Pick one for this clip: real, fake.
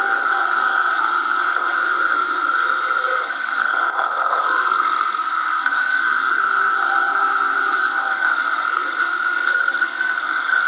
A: fake